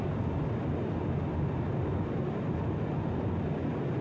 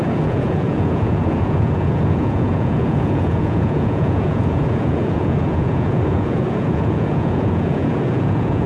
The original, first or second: first